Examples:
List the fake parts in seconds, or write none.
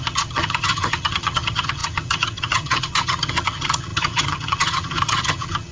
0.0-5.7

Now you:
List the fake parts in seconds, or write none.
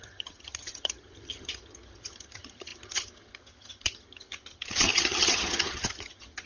0.0-6.5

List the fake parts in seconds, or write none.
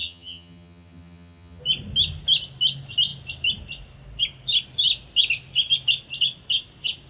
0.0-1.6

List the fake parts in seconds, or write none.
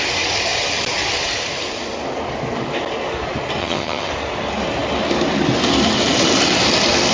3.6-4.1